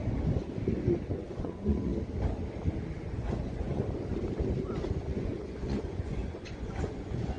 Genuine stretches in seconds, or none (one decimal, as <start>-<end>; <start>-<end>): 0.0-1.1; 1.9-3.0; 3.8-4.9